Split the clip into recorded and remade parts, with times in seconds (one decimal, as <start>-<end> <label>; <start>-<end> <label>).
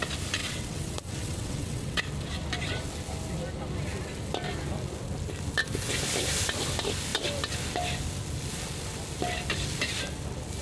0.0-0.4 recorded; 0.4-2.0 remade; 2.0-10.6 recorded